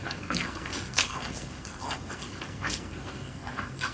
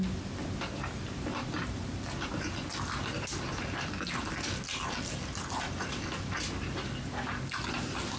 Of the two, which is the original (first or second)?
second